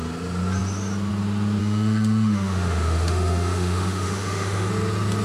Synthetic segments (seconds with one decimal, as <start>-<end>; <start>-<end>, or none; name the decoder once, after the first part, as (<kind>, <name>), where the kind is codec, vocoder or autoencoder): 1.6-4.7 (autoencoder, DAC-VAE)